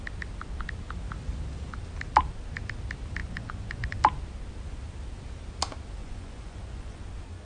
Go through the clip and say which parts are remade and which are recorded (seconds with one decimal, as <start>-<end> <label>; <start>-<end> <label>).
0.0-3.2 recorded; 3.2-4.0 remade; 4.0-6.0 recorded; 6.0-7.0 remade; 7.0-7.4 recorded

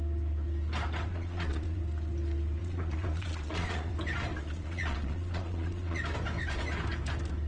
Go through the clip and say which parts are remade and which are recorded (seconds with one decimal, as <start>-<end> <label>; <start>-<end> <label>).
0.0-1.1 recorded; 1.1-1.8 remade; 1.8-2.6 recorded; 2.6-3.9 remade; 3.9-4.3 recorded; 4.3-6.0 remade; 6.0-7.5 recorded